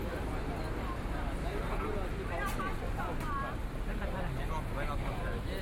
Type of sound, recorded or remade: recorded